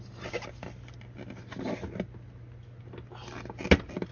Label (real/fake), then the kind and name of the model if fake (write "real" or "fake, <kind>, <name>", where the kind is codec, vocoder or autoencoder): real